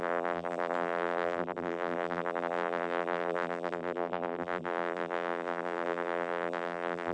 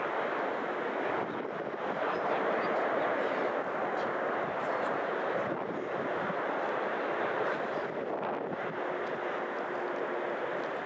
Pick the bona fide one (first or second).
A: second